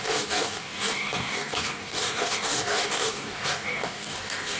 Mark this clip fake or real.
fake